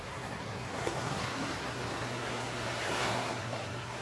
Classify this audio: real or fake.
fake